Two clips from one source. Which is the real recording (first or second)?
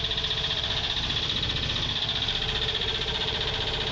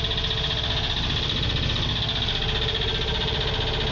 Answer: second